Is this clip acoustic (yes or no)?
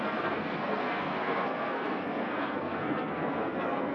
no